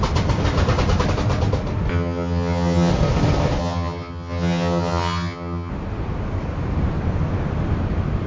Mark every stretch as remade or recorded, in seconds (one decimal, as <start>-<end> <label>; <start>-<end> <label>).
0.0-1.9 recorded; 1.9-2.9 remade; 2.9-3.6 recorded; 3.6-5.7 remade; 5.7-8.3 recorded